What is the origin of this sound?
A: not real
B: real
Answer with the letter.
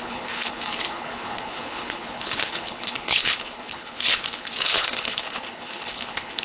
A